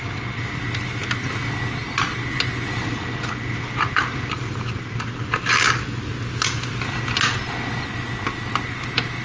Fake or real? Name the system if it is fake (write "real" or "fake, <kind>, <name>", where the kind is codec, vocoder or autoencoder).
real